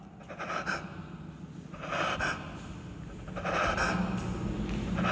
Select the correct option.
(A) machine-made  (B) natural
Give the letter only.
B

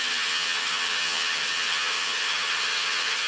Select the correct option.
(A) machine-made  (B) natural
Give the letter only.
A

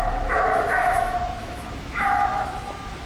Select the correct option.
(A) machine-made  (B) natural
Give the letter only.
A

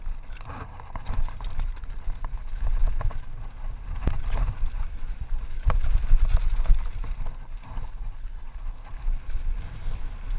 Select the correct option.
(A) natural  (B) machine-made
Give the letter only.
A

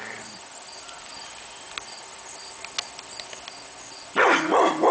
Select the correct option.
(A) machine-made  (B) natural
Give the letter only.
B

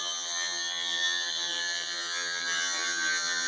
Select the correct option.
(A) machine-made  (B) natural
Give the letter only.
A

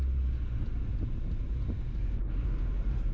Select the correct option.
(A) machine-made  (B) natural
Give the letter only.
B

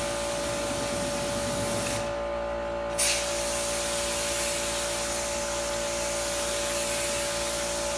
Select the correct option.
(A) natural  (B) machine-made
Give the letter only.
A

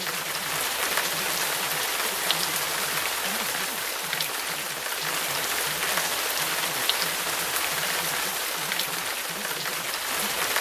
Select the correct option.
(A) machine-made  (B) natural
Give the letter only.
A